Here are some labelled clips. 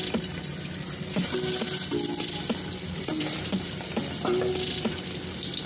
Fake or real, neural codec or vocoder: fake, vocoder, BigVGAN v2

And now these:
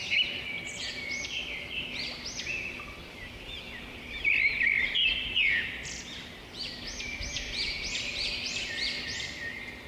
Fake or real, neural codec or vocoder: fake, vocoder, BigVGAN v2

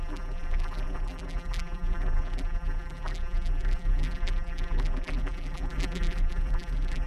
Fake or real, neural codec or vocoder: fake, vocoder, BigVGAN v2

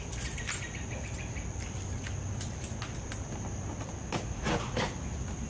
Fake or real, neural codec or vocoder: real